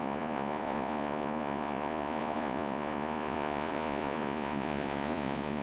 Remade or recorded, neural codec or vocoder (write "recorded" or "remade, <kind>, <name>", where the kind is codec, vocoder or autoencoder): remade, vocoder, Vocos